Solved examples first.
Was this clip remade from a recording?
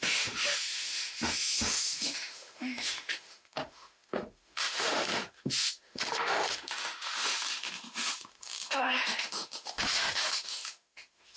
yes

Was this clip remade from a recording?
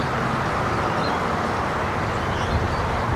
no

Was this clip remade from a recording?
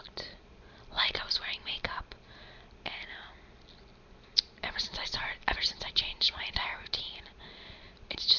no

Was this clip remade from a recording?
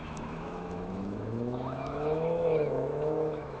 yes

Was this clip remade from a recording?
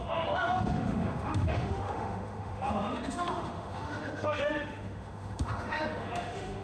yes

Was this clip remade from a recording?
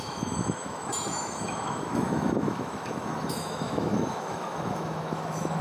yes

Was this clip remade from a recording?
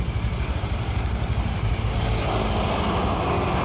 no